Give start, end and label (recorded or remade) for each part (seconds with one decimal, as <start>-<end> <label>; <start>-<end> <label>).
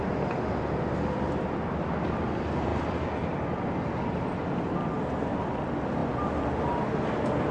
0.0-7.5 recorded